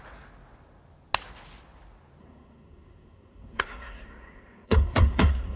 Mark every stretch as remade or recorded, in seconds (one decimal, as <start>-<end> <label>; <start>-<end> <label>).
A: 0.0-2.2 recorded; 2.2-5.6 remade